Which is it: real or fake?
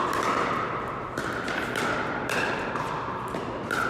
real